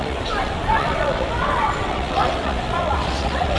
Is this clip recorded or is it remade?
remade